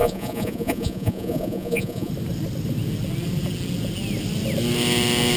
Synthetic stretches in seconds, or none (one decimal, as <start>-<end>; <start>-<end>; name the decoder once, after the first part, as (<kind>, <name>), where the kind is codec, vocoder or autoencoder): 0.0-2.1 (vocoder, Vocos)